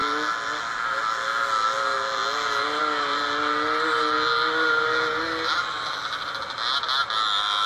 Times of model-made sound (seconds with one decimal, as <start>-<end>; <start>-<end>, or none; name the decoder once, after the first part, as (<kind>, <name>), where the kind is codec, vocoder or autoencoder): none